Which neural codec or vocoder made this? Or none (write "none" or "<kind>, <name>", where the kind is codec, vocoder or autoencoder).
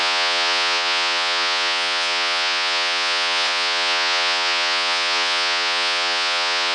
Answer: vocoder, Vocos